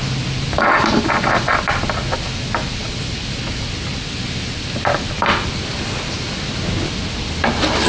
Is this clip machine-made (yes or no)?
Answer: no